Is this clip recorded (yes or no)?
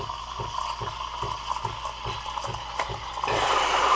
yes